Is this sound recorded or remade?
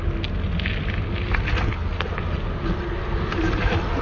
recorded